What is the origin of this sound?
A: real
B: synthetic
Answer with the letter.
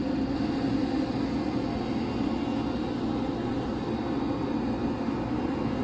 A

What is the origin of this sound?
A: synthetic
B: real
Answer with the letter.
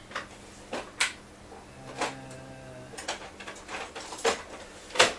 B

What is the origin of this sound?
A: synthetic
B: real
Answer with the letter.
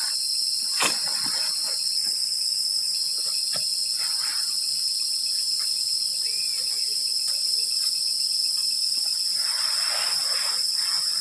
B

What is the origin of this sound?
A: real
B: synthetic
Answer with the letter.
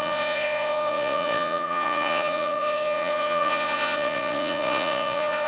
B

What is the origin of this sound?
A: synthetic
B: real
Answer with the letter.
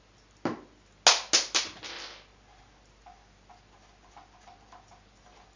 B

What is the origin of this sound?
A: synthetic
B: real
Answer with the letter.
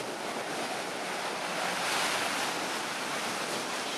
B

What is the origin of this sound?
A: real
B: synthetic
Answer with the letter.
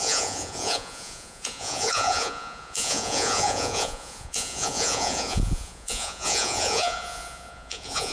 B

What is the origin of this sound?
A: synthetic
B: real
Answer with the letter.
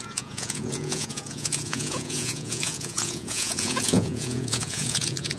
A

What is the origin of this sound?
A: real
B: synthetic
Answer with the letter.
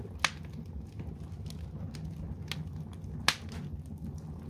A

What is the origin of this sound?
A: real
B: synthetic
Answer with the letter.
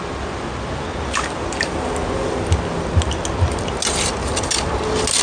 A